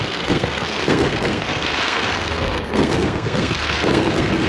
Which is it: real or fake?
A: fake